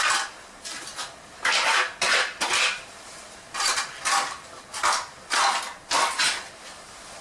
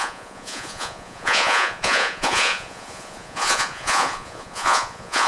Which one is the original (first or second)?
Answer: first